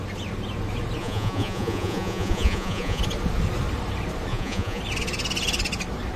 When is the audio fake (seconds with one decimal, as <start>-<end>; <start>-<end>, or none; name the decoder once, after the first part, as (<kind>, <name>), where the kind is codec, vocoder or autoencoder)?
1.0-3.0 (vocoder, Vocos); 4.3-4.8